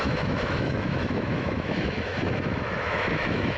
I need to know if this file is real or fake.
fake